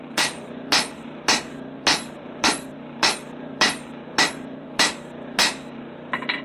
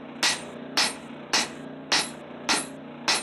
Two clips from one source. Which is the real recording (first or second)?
second